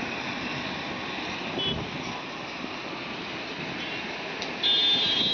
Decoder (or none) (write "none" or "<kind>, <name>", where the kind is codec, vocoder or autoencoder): none